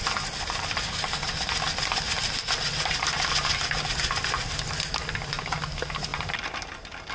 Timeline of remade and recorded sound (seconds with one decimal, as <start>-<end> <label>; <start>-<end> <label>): 0.0-7.1 recorded